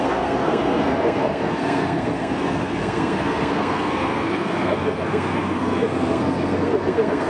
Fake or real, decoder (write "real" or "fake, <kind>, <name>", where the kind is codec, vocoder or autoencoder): fake, codec, SNAC